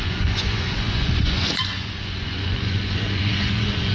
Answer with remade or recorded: remade